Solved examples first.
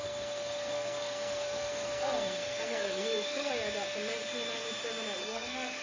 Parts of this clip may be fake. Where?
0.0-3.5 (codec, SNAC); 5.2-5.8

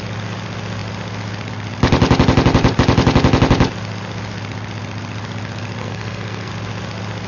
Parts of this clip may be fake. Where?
5.8-6.5 (codec, SNAC)

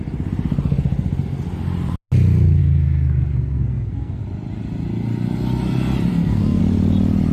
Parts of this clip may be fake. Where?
2.6-4.2 (codec, SNAC); 6.1-6.6